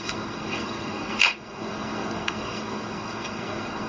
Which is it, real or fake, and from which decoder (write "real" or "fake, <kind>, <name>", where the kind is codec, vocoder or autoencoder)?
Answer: fake, codec, SNAC